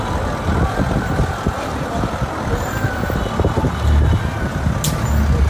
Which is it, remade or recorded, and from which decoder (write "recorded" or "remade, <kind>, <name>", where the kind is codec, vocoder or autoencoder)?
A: recorded